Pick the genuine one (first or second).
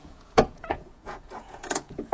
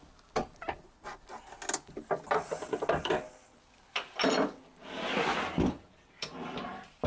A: second